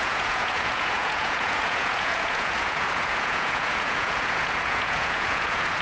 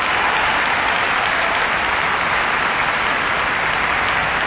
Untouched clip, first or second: second